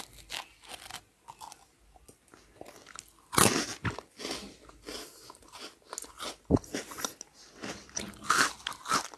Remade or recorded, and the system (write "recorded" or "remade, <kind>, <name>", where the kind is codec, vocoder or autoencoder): recorded